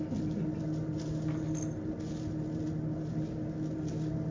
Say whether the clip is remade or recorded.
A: recorded